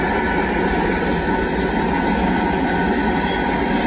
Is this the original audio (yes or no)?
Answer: yes